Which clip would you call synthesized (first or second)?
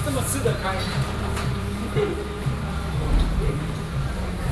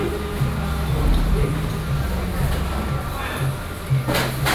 first